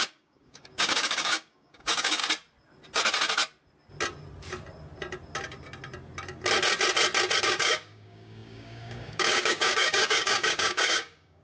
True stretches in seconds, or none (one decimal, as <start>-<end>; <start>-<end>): 2.2-7.4